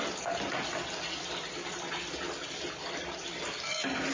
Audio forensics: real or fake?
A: real